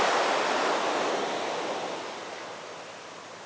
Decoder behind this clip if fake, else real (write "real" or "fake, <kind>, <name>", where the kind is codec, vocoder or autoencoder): real